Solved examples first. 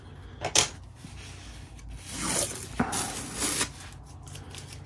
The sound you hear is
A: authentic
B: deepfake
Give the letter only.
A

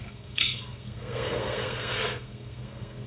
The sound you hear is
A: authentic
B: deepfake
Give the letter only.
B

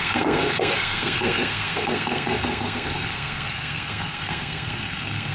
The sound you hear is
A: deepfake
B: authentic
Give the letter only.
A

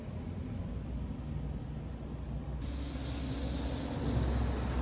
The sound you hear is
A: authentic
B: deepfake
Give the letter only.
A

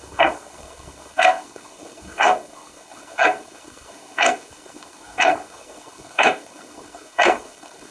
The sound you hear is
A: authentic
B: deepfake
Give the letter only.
B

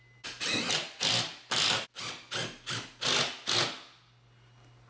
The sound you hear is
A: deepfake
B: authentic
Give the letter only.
B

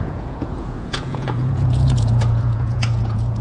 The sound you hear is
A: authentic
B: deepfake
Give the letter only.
B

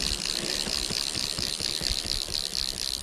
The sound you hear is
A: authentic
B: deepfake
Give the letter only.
A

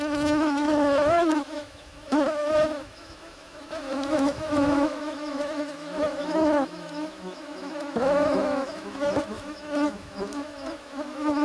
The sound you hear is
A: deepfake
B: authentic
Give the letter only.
A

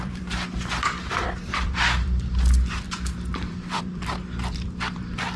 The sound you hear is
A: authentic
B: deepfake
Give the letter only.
B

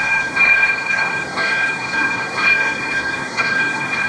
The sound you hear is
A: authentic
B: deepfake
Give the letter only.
B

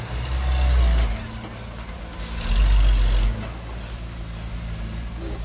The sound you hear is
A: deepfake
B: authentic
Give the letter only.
B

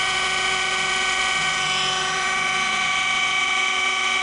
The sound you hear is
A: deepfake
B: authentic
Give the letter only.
A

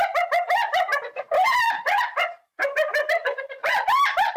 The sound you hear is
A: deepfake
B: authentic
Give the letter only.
A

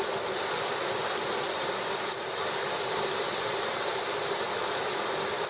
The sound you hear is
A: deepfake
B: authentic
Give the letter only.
B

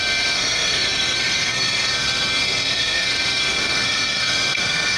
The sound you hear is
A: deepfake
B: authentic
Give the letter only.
A